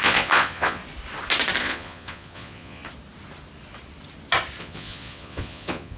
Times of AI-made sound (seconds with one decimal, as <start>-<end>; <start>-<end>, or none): 0.0-0.8; 1.6-2.8; 4.6-6.0